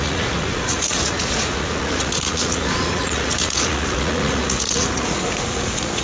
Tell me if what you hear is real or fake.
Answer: fake